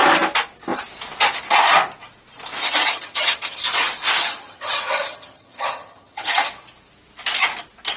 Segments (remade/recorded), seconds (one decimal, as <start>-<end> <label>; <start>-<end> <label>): 0.0-2.6 recorded; 2.6-3.6 remade; 3.6-4.2 recorded; 4.2-6.5 remade; 6.5-8.0 recorded